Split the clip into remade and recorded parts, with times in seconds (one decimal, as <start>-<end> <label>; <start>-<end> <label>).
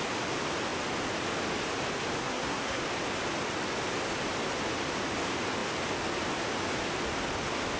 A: 0.0-2.2 recorded; 2.2-2.8 remade; 2.8-7.8 recorded